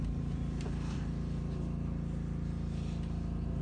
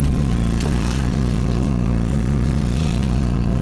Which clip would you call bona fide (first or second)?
first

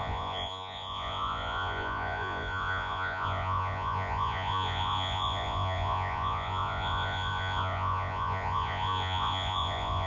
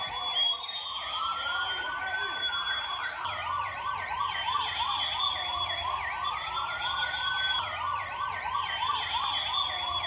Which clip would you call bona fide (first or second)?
second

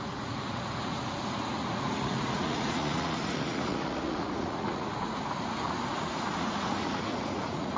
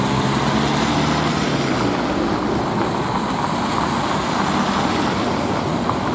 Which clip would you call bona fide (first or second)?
second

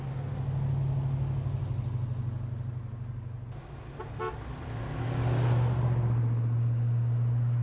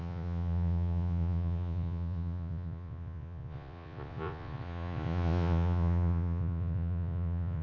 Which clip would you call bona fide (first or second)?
first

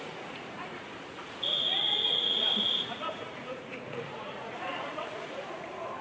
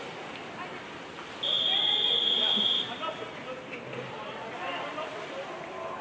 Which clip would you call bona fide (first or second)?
second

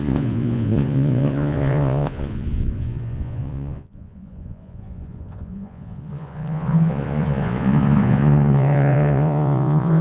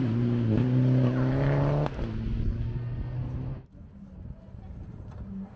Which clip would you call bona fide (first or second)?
second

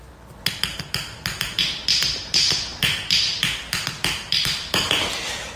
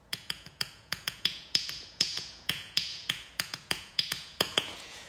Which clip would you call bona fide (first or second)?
first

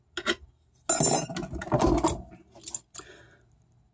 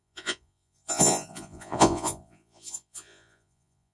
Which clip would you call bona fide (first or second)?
first